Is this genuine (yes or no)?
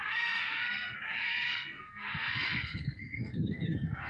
no